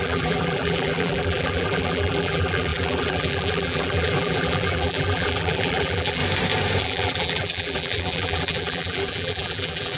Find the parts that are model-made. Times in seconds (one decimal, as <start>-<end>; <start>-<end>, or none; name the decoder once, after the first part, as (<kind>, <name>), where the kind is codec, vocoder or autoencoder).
0.0-6.2 (vocoder, BigVGAN v2); 6.8-10.0